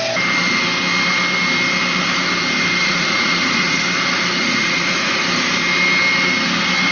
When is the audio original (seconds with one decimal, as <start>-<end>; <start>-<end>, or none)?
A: 0.0-2.8; 3.8-4.4; 5.2-6.9